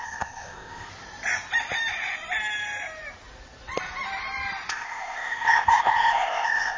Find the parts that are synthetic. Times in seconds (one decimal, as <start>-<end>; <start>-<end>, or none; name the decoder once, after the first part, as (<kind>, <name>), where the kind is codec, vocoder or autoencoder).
0.0-0.9 (codec, ZipCodec); 4.7-6.8